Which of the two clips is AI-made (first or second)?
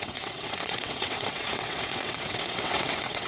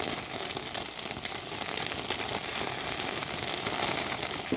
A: first